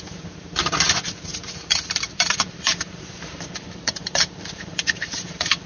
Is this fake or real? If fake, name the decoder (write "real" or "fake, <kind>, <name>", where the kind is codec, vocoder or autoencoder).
fake, vocoder, BigVGAN v2